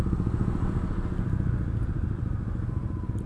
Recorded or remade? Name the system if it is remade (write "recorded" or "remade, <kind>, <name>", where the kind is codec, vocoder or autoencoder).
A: recorded